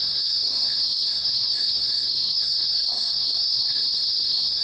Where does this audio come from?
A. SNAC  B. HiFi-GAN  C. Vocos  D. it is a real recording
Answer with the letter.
A